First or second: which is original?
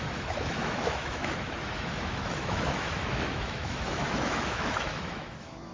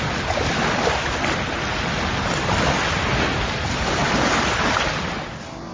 second